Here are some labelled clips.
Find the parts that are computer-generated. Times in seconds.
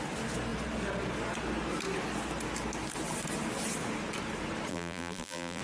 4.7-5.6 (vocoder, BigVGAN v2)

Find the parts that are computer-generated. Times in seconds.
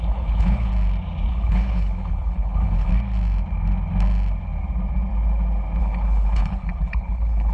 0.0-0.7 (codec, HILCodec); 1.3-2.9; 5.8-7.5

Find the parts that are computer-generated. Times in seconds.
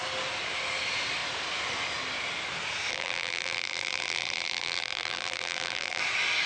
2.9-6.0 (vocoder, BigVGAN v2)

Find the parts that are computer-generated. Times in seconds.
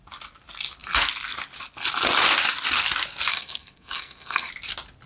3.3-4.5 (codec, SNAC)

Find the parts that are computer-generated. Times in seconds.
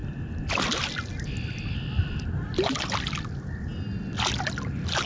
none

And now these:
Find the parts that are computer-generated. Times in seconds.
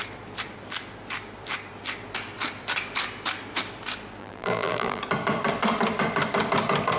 4.2-5.0 (vocoder, BigVGAN v2)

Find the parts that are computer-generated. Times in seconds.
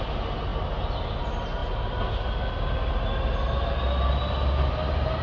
none